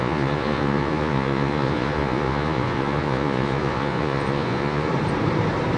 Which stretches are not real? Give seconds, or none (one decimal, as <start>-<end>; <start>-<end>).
0.0-4.9